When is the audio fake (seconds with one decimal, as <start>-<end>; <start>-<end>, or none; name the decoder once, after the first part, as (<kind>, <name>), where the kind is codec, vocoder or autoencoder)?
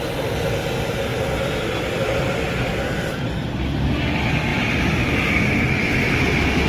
1.1-3.3 (vocoder, BigVGAN v2)